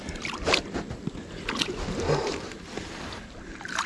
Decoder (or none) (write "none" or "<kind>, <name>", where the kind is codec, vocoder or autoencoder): none